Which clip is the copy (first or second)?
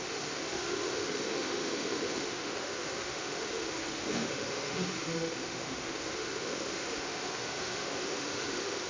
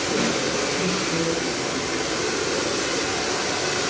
first